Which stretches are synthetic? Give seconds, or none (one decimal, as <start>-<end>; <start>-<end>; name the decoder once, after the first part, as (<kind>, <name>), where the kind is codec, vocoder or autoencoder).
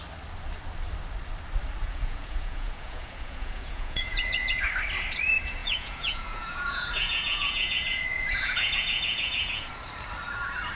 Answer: 1.8-4.7 (vocoder, Vocos); 5.6-9.7